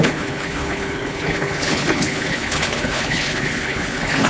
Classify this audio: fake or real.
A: fake